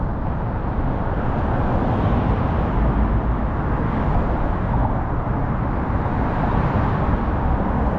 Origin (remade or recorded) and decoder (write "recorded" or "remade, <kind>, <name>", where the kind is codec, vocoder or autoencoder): recorded